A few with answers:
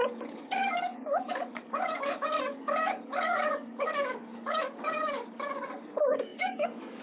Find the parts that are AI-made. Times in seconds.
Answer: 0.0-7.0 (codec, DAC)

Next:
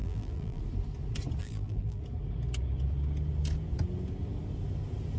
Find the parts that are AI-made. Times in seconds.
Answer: 0.0-0.6 (vocoder, BigVGAN v2); 1.4-2.0

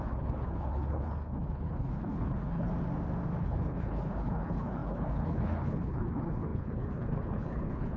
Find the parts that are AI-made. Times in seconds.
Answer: 0.0-2.7 (codec, HILCodec); 3.4-8.0

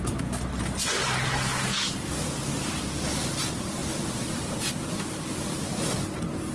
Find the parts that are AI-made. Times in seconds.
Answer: none

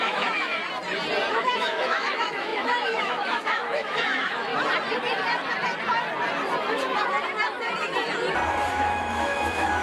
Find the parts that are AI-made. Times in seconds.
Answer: 0.0-0.6 (autoencoder, DAC-VAE); 1.3-4.5; 8.7-9.8

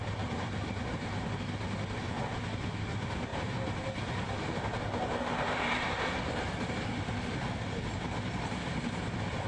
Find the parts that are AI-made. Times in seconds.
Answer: 0.0-1.2 (vocoder, BigVGAN v2)